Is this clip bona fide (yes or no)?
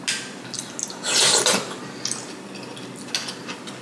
yes